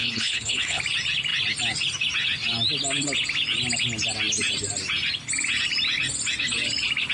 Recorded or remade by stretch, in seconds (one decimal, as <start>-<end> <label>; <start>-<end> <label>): 0.0-0.8 remade; 0.8-7.1 recorded